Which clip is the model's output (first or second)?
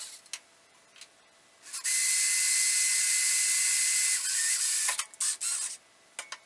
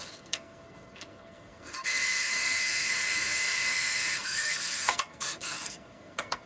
second